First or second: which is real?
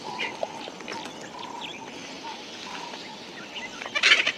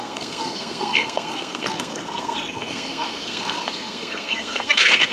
first